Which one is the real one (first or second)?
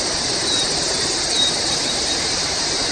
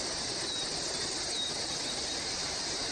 second